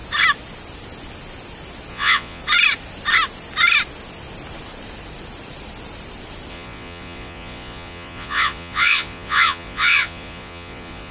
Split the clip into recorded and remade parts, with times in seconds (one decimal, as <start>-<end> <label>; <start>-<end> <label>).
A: 0.0-1.9 recorded; 1.9-2.4 remade; 2.4-6.5 recorded; 6.5-11.1 remade